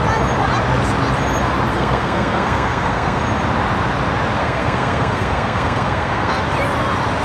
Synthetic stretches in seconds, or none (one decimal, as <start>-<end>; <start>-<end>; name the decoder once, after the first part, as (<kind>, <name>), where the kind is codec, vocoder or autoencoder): 1.7-3.2 (codec, SNAC); 4.4-6.4